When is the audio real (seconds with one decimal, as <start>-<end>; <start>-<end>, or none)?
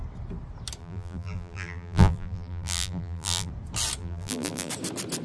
0.0-0.8; 3.5-4.0; 4.7-5.2